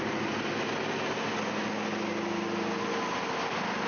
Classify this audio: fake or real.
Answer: real